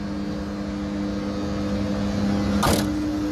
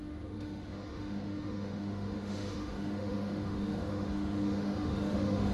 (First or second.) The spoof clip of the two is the second